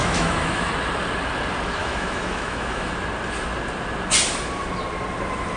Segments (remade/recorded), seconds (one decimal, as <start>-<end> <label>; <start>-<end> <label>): 0.0-0.7 remade; 0.7-1.8 recorded; 1.8-2.9 remade; 2.9-5.6 recorded